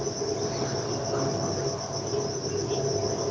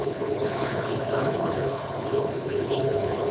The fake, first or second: second